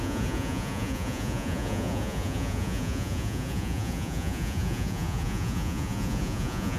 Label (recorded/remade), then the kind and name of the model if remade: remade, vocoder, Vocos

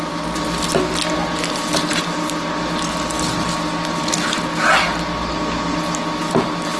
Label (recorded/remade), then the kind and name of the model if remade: recorded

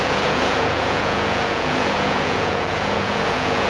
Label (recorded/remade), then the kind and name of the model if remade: remade, vocoder, Vocos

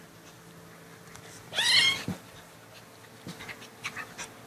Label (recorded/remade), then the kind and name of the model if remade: recorded